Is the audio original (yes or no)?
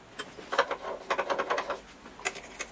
yes